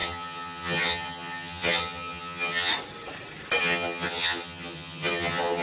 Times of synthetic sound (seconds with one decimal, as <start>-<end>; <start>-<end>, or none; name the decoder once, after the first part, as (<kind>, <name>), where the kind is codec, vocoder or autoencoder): 0.0-2.7 (vocoder, HiFi-GAN); 3.6-5.6

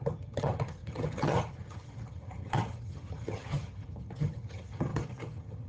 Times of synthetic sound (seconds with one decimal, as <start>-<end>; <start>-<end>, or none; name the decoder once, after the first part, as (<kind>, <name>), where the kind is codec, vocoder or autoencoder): 0.0-5.7 (vocoder, HiFi-GAN)

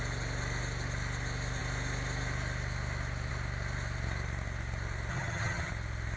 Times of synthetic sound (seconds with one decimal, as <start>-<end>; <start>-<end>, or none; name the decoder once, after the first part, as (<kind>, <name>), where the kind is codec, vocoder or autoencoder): 5.1-5.7 (vocoder, HiFi-GAN)

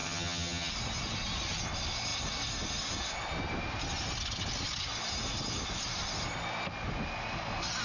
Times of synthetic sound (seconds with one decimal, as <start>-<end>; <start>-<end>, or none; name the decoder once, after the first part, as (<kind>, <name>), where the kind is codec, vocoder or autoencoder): 0.0-0.7 (vocoder, HiFi-GAN)

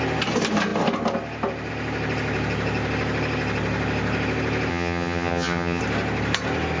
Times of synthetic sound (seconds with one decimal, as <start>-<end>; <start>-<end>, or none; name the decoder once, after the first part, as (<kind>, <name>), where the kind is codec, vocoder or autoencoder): 4.7-5.8 (vocoder, HiFi-GAN)

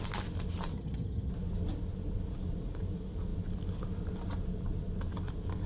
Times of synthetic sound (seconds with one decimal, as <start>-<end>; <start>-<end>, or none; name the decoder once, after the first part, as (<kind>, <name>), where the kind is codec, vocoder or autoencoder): 0.7-1.3 (vocoder, HiFi-GAN)

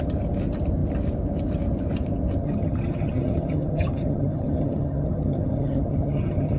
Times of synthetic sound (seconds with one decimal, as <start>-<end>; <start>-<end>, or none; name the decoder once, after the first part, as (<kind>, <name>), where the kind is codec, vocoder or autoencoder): 2.4-6.6 (vocoder, HiFi-GAN)

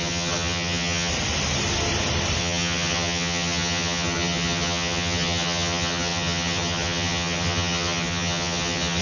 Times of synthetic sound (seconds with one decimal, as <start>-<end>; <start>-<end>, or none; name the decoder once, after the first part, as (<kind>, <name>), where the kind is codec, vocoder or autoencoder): 0.0-1.1 (vocoder, HiFi-GAN); 2.4-9.0